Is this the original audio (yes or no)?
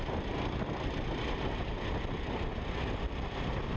yes